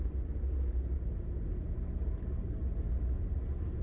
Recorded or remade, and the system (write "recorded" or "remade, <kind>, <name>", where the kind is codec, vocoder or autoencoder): recorded